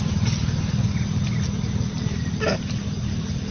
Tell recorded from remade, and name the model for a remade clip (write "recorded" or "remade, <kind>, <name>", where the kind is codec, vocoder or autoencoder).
recorded